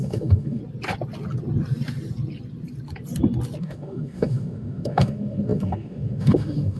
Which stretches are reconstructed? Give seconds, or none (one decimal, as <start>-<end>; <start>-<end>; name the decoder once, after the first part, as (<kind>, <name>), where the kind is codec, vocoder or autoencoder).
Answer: 0.0-0.6 (autoencoder, DAC-VAE); 3.6-6.8